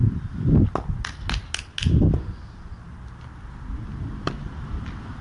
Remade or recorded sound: recorded